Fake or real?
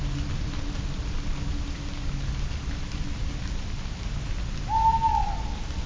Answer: real